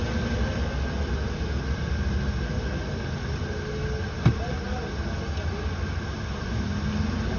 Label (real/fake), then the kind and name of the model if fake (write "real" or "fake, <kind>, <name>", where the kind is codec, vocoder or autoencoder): real